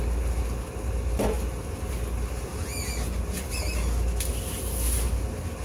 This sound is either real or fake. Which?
real